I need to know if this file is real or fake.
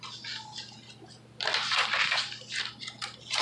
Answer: real